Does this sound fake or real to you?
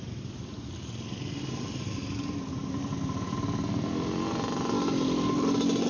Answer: real